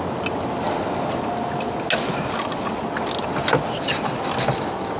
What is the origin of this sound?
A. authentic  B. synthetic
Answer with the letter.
A